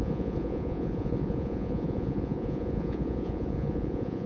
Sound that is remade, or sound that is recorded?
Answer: remade